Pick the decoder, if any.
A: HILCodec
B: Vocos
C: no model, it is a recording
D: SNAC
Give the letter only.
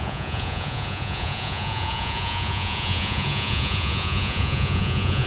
B